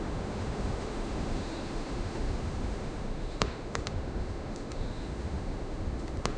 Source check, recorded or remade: remade